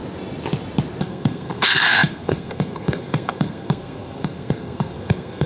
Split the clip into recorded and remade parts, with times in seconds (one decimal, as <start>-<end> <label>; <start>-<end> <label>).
0.0-1.0 recorded; 1.0-5.5 remade